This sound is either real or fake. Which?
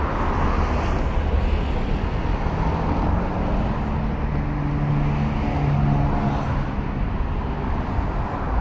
real